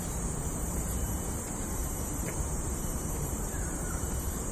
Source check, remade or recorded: remade